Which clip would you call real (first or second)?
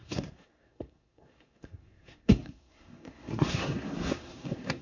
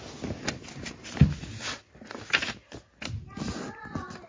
second